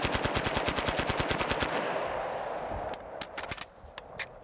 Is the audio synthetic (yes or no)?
no